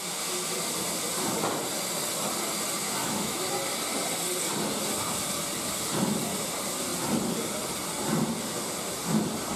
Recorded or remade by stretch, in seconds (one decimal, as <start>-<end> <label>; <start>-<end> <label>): 0.0-3.0 recorded; 3.0-3.5 remade; 3.5-9.6 recorded